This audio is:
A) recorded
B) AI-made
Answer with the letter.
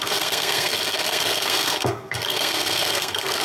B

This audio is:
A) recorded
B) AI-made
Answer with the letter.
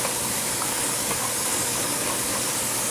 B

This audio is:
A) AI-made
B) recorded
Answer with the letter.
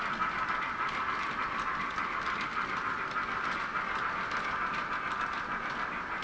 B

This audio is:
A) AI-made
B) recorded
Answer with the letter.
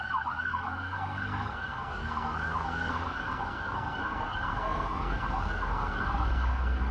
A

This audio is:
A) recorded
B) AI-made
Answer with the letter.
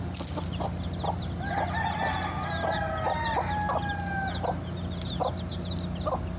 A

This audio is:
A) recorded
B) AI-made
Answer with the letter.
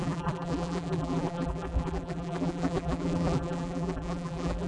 B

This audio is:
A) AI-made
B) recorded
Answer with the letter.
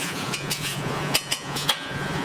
A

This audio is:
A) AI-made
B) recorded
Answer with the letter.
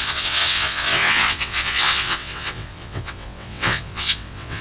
A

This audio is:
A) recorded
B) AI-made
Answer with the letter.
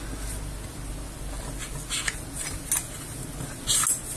A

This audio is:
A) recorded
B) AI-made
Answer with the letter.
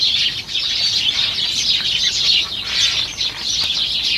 A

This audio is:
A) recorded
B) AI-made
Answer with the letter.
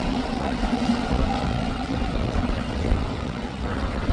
B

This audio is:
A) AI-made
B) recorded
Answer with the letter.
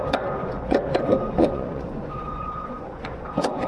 A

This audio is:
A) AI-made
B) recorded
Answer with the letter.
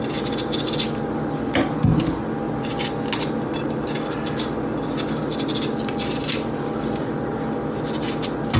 B